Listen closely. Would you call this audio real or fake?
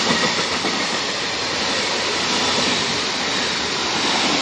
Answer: real